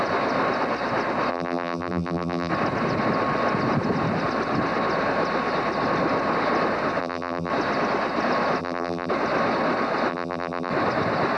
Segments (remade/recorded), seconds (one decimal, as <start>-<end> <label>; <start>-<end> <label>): 0.0-1.3 recorded; 1.3-2.5 remade; 2.5-7.0 recorded; 7.0-7.5 remade; 7.5-8.6 recorded; 8.6-9.1 remade; 9.1-10.1 recorded; 10.1-10.7 remade; 10.7-11.4 recorded